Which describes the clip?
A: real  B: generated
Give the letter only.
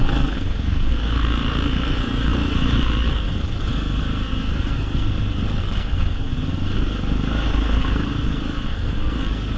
B